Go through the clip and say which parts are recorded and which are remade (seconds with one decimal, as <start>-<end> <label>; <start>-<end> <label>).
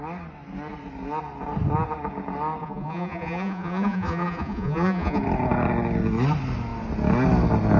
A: 0.0-2.6 recorded; 2.6-5.2 remade; 5.2-7.8 recorded